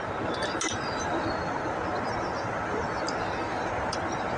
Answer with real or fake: real